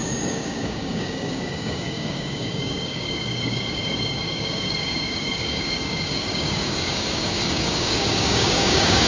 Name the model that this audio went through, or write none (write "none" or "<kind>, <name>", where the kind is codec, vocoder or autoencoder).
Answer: codec, DAC